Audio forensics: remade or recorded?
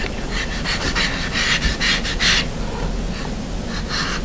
recorded